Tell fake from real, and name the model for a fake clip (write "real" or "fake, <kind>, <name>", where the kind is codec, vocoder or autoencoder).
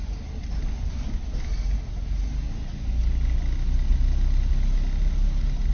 real